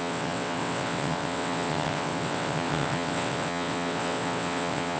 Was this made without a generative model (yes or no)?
no